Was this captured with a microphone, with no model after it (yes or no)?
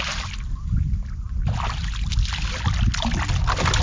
yes